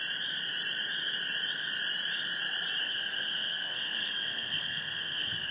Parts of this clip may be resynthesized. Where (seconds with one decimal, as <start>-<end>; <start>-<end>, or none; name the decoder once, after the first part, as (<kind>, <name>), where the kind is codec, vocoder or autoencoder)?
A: 2.8-5.5 (codec, SNAC)